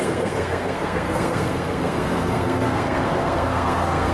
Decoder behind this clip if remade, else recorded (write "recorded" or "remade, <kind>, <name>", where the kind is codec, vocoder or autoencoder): remade, codec, SNAC